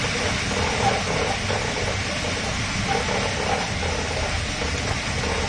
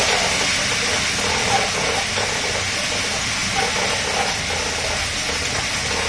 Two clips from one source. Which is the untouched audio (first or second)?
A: second